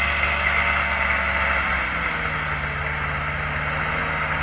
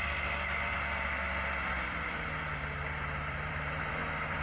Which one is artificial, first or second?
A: second